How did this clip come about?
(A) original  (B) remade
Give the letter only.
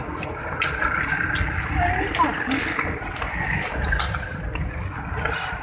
A